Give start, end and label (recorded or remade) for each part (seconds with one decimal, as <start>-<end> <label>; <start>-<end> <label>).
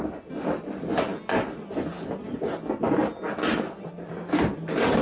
0.0-5.0 recorded